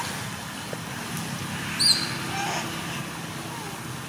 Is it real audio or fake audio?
real